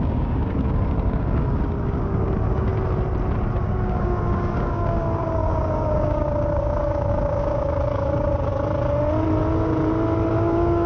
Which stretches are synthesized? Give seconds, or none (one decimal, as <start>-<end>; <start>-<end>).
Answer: 0.0-2.7; 3.6-8.5; 10.3-10.9